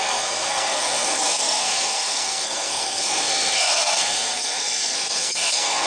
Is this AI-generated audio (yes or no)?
yes